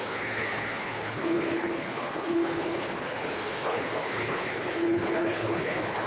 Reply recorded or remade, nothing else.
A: remade